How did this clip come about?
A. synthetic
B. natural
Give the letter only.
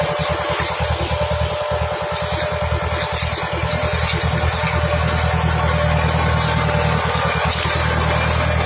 B